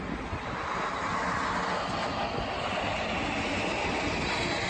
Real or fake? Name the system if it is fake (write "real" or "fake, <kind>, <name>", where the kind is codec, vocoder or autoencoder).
real